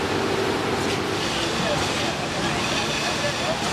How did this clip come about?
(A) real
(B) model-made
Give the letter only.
A